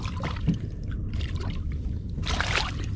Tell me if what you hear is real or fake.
fake